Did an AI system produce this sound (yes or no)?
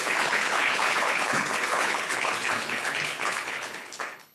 yes